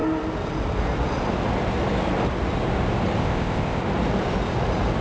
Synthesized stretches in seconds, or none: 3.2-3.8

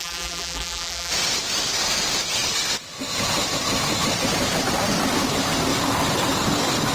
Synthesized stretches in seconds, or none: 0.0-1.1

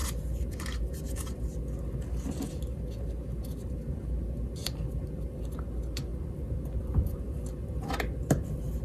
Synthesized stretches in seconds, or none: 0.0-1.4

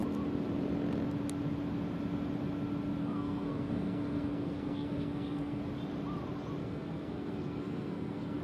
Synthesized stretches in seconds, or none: 3.0-5.6; 6.6-8.4